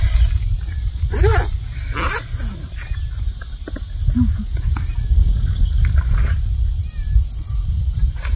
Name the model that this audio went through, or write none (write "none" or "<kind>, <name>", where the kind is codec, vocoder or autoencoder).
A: none